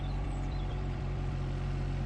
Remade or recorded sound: remade